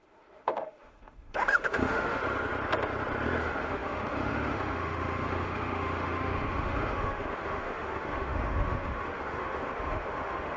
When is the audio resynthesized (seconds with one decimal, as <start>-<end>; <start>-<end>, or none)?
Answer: 0.0-2.2; 3.4-10.6

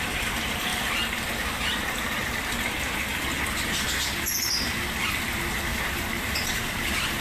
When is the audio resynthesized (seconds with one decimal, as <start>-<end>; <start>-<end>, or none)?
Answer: 5.7-7.2

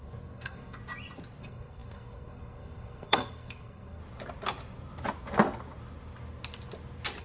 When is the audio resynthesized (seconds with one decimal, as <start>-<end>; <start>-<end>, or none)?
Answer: 0.0-0.8; 1.4-4.0

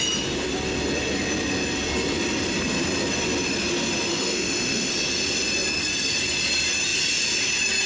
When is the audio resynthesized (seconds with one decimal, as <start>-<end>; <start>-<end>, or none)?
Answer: 4.1-4.9

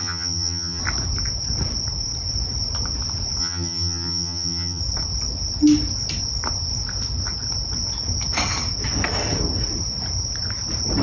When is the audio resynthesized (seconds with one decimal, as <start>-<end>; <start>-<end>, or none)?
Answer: 0.0-0.8; 3.4-4.8